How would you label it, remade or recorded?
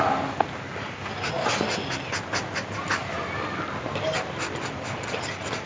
recorded